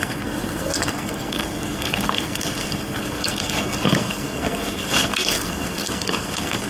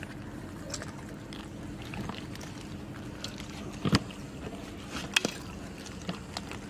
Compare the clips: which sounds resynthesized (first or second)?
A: first